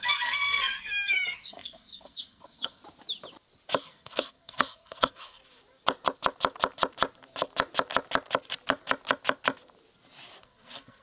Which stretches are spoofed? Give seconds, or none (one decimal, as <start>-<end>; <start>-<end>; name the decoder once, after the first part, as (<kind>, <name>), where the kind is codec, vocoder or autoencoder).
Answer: 0.0-2.8 (codec, SNAC); 3.8-5.4; 10.4-11.0